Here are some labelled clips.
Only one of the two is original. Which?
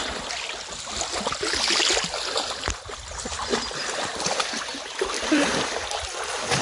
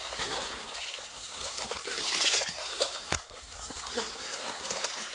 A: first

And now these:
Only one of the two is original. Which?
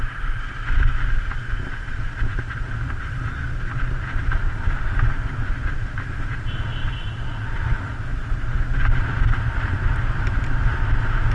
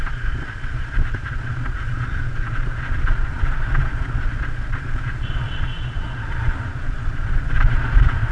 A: first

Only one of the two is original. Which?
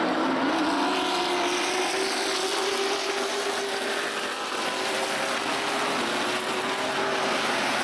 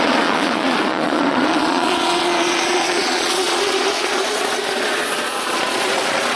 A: first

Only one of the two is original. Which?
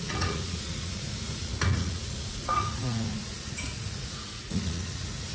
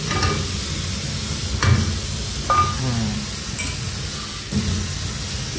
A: second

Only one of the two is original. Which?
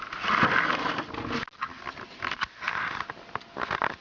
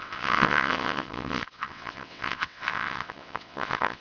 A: first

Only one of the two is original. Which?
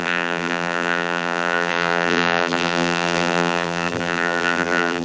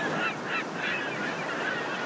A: second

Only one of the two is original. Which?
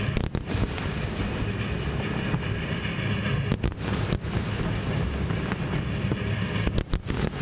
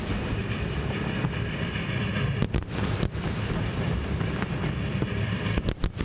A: first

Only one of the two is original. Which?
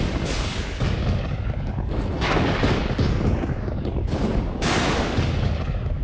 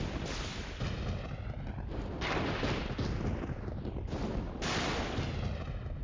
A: second